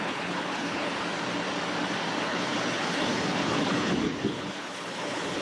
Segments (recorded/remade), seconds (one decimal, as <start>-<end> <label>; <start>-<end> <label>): 0.0-0.9 remade; 0.9-2.2 recorded; 2.2-5.4 remade